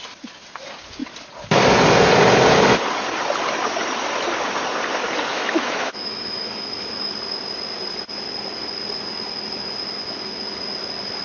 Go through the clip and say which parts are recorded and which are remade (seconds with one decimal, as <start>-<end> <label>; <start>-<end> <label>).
0.0-5.3 recorded; 5.3-7.1 remade; 7.1-11.2 recorded